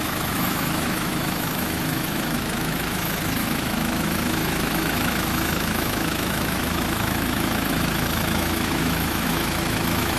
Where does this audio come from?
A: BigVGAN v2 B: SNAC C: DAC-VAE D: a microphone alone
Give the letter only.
C